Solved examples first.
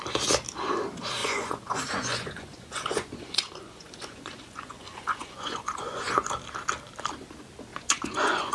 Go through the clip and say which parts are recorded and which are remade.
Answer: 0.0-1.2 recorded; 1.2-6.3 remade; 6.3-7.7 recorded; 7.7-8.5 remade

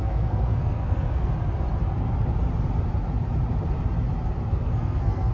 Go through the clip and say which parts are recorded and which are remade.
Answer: 0.0-1.3 remade; 1.3-4.5 recorded; 4.5-5.3 remade

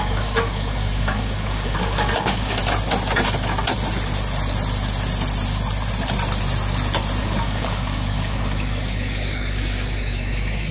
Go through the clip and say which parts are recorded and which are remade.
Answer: 0.0-2.6 remade; 2.6-7.2 recorded; 7.2-10.7 remade

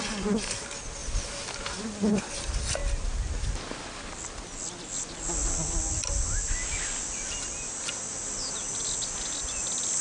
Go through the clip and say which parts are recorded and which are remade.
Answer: 0.0-10.0 recorded